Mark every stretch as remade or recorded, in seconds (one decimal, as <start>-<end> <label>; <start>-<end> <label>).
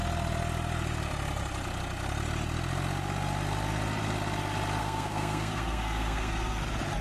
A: 0.0-4.8 recorded; 4.8-6.6 remade; 6.6-7.0 recorded